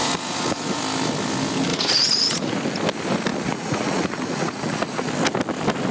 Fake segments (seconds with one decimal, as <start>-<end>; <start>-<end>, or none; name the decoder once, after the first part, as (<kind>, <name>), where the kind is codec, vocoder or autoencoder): 0.0-0.8 (vocoder, Vocos); 1.7-2.6; 3.3-5.1